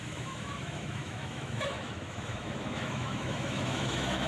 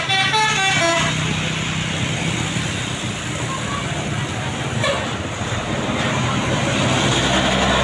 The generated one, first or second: first